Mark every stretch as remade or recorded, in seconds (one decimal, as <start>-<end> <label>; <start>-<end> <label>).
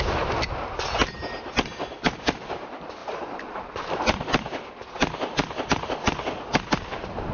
0.0-3.0 recorded; 3.0-3.9 remade; 3.9-7.3 recorded